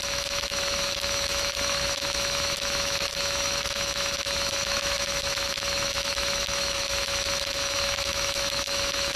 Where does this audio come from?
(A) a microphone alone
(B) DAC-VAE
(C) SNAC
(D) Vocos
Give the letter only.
B